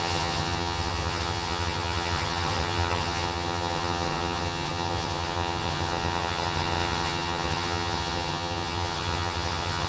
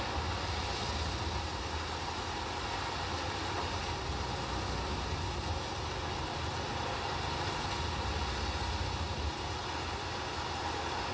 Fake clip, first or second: first